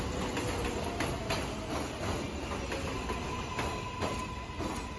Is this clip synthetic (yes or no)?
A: no